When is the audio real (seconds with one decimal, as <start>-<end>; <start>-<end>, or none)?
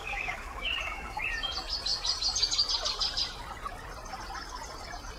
1.2-5.2